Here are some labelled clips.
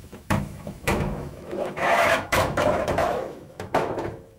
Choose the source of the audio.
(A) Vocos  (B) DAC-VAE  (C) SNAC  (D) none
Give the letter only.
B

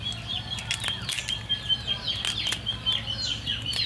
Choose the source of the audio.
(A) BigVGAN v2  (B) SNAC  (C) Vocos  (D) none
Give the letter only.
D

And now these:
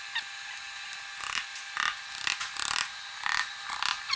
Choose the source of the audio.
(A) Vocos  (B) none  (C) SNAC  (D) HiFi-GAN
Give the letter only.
B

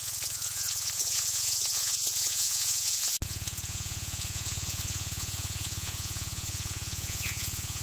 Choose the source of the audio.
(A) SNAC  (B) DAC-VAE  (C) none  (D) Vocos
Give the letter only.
D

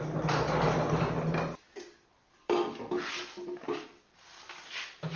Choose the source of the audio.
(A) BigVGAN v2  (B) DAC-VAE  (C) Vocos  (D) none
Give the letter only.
D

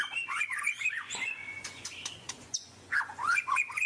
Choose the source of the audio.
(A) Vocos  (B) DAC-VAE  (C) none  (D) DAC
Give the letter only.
A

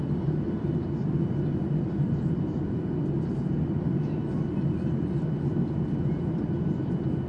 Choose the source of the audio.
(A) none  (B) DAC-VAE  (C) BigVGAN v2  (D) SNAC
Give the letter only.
A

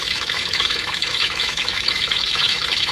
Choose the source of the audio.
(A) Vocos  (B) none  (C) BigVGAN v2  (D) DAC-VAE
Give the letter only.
D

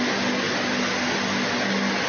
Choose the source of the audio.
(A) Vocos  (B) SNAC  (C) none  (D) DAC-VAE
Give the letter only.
C